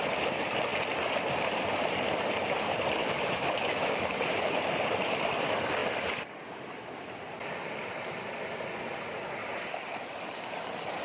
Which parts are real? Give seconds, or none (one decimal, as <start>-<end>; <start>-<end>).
0.0-3.0; 4.2-11.0